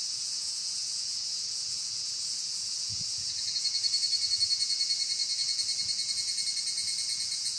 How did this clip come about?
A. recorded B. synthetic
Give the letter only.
B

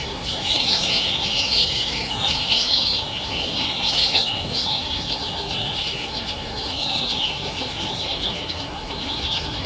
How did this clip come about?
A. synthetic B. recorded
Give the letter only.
A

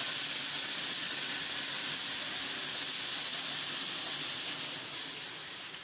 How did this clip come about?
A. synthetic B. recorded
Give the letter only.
B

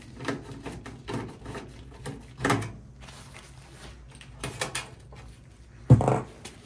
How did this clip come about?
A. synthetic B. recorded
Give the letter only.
B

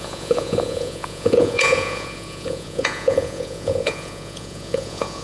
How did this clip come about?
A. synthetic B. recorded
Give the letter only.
A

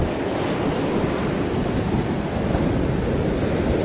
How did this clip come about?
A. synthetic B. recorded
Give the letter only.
B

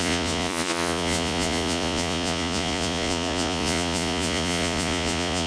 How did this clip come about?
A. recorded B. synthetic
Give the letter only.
B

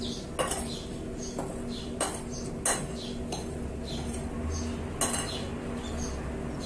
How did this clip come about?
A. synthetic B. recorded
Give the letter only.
B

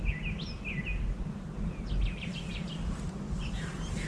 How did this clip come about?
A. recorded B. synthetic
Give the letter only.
A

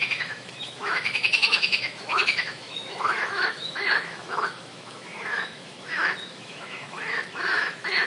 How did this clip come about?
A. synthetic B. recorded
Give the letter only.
A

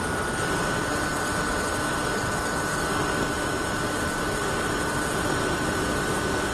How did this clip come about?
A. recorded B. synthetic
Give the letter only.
A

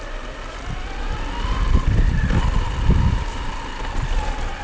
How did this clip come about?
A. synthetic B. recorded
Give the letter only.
B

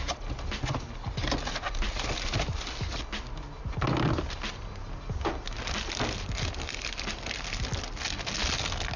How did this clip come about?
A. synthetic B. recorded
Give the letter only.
B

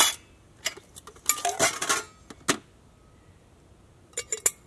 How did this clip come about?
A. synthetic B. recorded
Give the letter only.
B